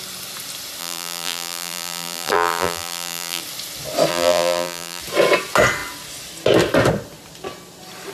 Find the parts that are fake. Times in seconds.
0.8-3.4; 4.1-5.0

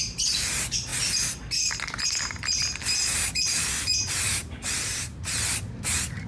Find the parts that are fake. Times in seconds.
0.0-0.9; 3.7-6.3

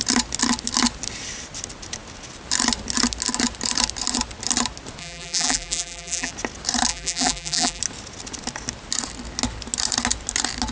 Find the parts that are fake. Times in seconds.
5.0-6.3; 6.9-7.8